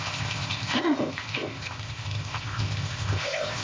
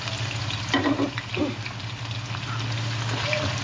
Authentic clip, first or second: second